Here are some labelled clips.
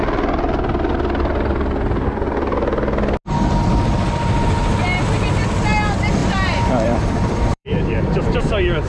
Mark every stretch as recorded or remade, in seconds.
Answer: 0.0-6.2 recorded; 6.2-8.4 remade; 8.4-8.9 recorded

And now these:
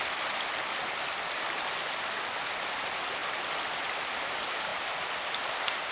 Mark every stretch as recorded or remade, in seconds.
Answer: 0.0-5.9 recorded

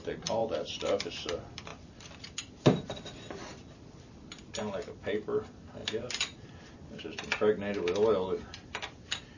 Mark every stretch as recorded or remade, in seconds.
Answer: 0.0-1.7 recorded; 1.7-2.4 remade; 2.4-5.8 recorded; 5.8-7.0 remade; 7.0-9.4 recorded

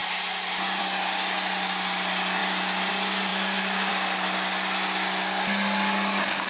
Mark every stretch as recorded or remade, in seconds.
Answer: 0.0-2.4 recorded; 2.4-2.9 remade; 2.9-3.3 recorded; 3.3-3.9 remade; 3.9-6.5 recorded

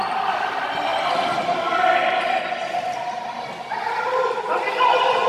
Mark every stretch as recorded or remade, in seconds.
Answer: 0.0-5.3 recorded

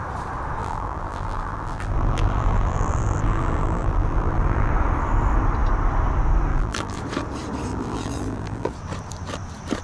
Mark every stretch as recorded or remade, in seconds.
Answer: 0.0-0.6 recorded; 0.6-4.7 remade; 4.7-6.5 recorded; 6.5-7.0 remade; 7.0-7.7 recorded; 7.7-8.7 remade; 8.7-9.8 recorded